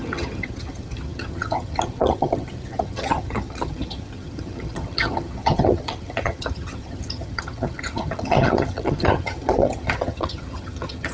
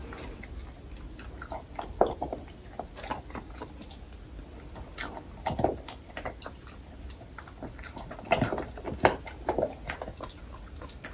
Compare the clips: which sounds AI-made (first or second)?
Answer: first